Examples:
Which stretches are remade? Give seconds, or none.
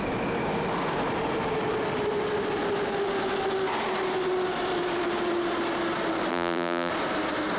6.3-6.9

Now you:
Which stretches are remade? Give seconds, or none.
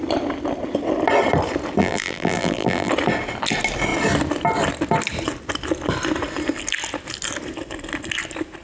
1.8-2.9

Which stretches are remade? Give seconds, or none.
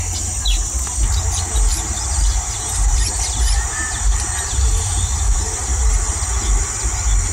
1.7-5.5